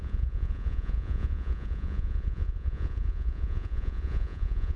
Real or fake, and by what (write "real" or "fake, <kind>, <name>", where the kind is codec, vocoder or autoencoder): fake, vocoder, Vocos